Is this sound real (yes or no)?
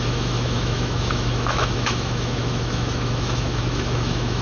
no